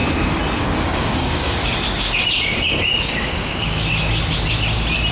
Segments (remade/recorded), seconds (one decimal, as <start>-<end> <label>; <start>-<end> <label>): 0.0-0.6 recorded; 0.6-1.6 remade; 1.6-2.9 recorded; 2.9-3.9 remade; 3.9-5.1 recorded

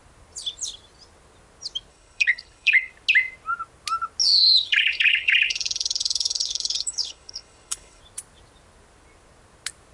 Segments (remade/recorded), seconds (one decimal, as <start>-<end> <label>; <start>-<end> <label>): 0.0-1.9 recorded; 1.9-2.9 remade; 2.9-4.2 recorded; 4.2-8.0 remade; 8.0-9.9 recorded